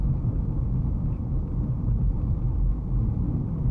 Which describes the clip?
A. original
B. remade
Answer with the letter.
A